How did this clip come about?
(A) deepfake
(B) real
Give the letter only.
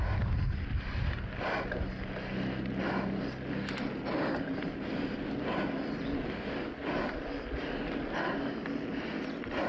B